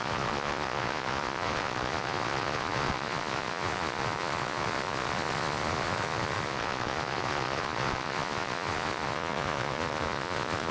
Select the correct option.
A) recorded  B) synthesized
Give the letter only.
B